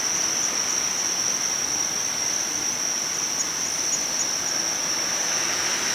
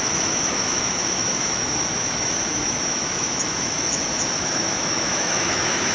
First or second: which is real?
first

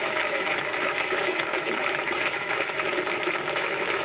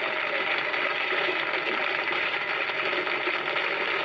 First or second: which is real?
second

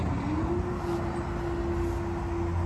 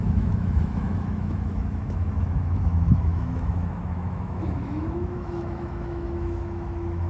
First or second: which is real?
first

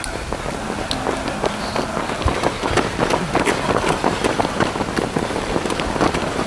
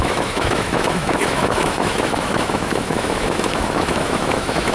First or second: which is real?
first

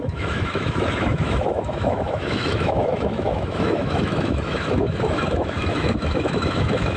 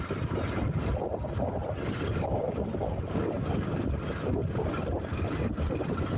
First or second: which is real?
second